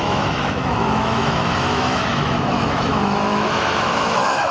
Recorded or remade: remade